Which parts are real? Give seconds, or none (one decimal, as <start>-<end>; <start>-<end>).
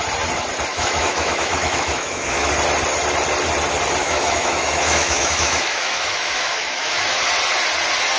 0.0-0.7; 2.5-4.0; 7.3-8.2